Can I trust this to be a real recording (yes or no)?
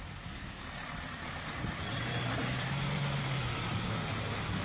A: no